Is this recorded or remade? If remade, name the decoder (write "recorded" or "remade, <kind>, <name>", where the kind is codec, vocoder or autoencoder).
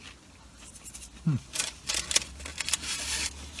recorded